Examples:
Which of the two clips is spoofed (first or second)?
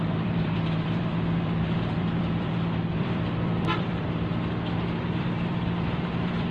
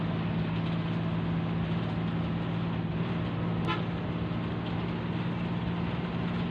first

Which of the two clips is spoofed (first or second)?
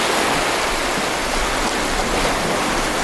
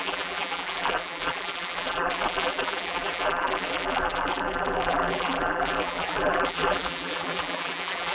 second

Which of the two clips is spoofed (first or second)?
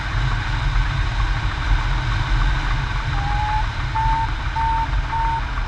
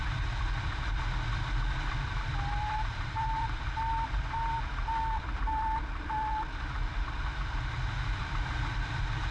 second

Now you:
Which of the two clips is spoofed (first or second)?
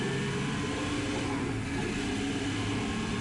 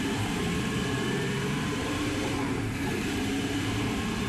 second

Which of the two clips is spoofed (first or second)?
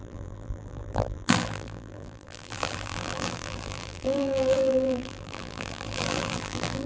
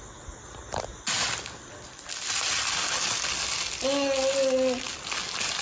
first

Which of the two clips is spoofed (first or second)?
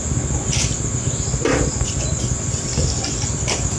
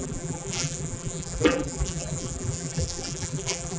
second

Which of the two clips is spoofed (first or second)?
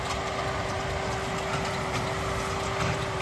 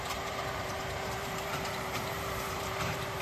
second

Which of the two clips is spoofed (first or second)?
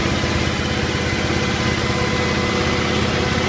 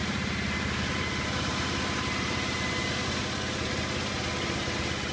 second